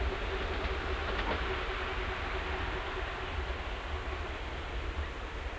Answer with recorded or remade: recorded